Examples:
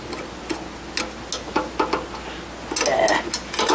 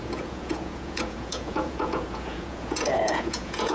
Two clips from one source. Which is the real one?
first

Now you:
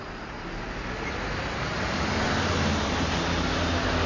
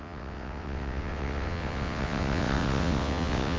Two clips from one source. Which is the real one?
first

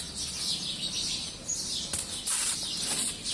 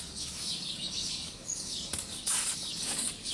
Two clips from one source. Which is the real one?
first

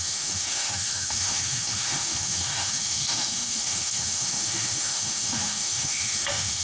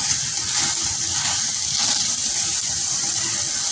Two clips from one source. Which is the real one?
second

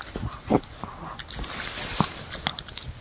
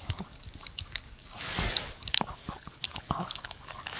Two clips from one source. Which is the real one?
first